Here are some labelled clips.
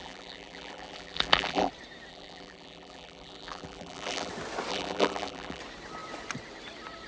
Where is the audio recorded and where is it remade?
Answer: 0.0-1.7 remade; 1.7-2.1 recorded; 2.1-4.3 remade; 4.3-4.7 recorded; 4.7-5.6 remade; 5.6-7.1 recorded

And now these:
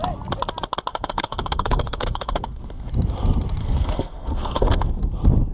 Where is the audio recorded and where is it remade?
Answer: 0.0-0.9 recorded; 0.9-2.9 remade; 2.9-3.6 recorded; 3.6-4.9 remade; 4.9-5.5 recorded

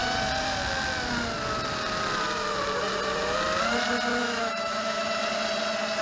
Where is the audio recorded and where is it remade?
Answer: 0.0-4.2 recorded; 4.2-5.2 remade; 5.2-6.0 recorded

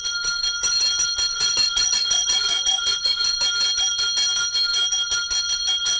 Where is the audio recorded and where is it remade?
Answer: 0.0-1.3 recorded; 1.3-3.3 remade; 3.3-6.0 recorded